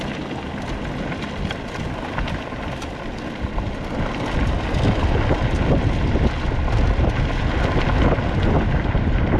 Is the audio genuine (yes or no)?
yes